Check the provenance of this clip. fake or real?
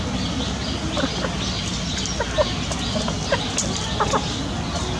real